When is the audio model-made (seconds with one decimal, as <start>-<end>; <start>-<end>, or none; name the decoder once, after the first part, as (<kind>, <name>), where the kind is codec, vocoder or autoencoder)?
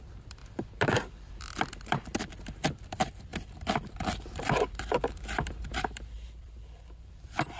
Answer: 0.0-0.4 (vocoder, BigVGAN v2); 1.1-7.6